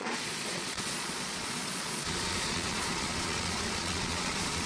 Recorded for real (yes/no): no